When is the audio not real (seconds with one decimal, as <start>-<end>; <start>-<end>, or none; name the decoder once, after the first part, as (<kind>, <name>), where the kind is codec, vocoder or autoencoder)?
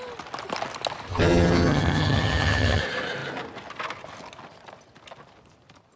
1.1-2.8 (vocoder, HiFi-GAN)